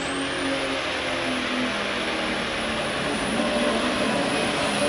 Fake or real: real